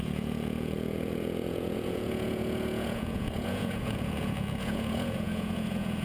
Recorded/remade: remade